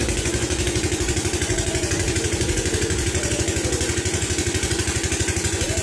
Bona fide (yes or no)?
no